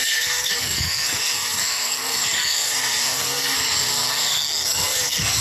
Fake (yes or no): yes